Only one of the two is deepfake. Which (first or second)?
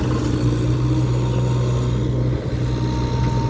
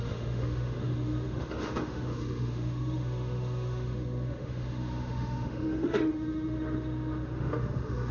second